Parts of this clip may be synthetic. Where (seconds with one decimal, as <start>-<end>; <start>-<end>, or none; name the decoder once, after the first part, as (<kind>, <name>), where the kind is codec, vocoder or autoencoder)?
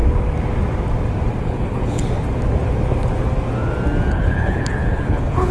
1.4-2.0 (codec, HILCodec); 4.1-5.5